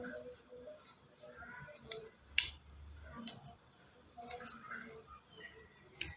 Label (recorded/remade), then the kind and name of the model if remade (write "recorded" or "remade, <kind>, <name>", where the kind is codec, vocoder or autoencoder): recorded